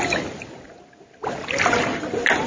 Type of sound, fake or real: real